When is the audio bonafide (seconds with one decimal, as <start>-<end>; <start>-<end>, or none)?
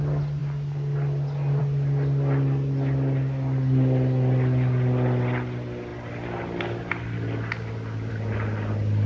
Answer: 0.0-9.1